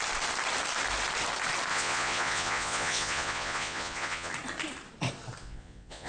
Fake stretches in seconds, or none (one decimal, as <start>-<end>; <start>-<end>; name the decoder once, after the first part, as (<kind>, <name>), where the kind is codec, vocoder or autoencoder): 1.7-4.3 (vocoder, Vocos); 5.4-6.1